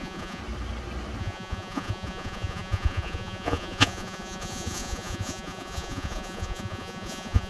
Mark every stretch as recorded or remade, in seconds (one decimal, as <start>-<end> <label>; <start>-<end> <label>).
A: 0.0-0.4 remade; 0.4-1.2 recorded; 1.2-7.5 remade